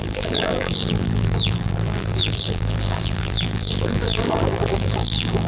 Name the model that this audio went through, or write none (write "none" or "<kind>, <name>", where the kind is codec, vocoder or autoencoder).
vocoder, BigVGAN v2